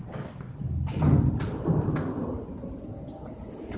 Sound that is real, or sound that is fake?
real